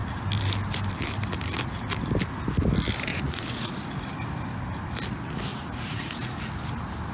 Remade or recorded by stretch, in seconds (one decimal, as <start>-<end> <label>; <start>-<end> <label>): 0.0-3.1 recorded; 3.1-3.7 remade; 3.7-5.5 recorded; 5.5-6.5 remade; 6.5-7.1 recorded